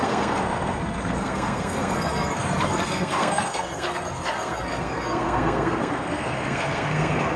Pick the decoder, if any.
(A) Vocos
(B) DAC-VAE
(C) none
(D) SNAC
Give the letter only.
D